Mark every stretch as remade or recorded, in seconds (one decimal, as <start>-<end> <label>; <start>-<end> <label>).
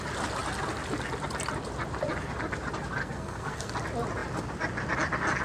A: 0.0-3.0 recorded; 3.0-3.7 remade; 3.7-5.4 recorded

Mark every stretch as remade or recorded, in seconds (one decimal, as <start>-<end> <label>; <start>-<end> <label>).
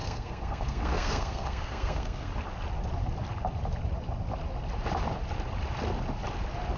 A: 0.0-2.3 remade; 2.3-6.8 recorded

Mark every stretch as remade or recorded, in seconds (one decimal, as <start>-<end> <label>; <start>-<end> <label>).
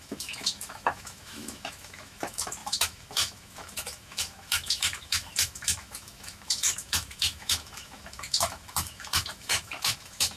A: 0.0-10.4 remade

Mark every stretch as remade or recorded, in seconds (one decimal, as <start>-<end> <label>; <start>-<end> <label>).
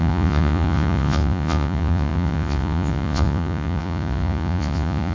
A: 0.0-5.1 remade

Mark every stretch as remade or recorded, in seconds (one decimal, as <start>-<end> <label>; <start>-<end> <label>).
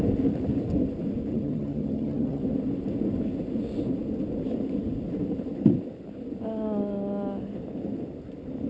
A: 0.0-1.3 recorded; 1.3-2.4 remade; 2.4-8.7 recorded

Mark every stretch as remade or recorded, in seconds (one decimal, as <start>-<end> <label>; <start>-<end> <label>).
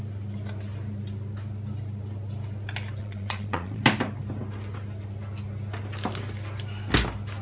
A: 0.0-3.0 recorded; 3.0-3.8 remade; 3.8-7.4 recorded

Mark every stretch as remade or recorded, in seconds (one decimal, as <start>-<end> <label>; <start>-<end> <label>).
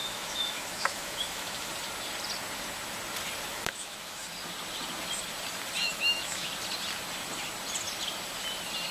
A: 0.0-1.7 remade; 1.7-3.5 recorded; 3.5-4.3 remade; 4.3-5.8 recorded; 5.8-6.5 remade; 6.5-8.9 recorded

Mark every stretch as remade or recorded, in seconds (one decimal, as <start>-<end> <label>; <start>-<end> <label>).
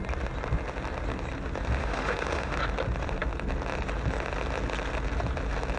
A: 0.0-1.8 recorded; 1.8-2.6 remade; 2.6-5.8 recorded